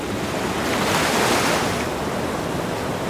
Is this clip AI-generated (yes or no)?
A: no